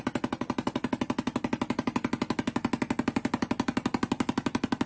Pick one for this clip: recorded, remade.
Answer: recorded